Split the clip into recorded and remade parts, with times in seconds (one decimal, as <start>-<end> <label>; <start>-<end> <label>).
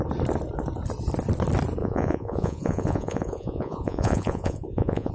0.0-1.8 recorded; 1.8-5.1 remade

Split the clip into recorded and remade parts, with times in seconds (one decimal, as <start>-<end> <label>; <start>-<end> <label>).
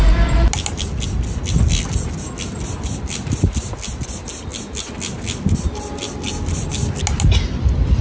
0.0-8.0 recorded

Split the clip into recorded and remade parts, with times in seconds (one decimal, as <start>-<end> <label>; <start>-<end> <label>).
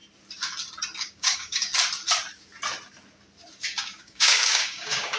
0.0-1.0 recorded; 1.0-1.7 remade; 1.7-3.6 recorded; 3.6-5.2 remade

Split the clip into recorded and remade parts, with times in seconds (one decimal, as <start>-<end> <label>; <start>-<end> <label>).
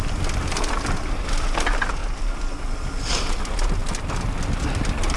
0.0-2.0 remade; 2.0-3.3 recorded; 3.3-3.8 remade; 3.8-4.6 recorded; 4.6-5.2 remade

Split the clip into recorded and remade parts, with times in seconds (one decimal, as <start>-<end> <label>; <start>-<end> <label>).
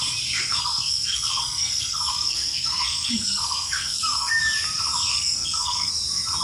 0.0-0.5 recorded; 0.5-4.3 remade; 4.3-5.1 recorded; 5.1-5.9 remade; 5.9-6.4 recorded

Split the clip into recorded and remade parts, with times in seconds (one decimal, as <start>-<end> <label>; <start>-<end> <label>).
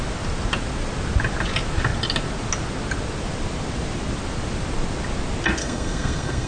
0.0-5.6 recorded; 5.6-6.5 remade